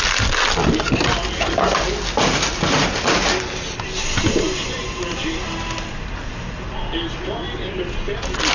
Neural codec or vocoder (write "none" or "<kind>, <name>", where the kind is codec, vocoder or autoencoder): none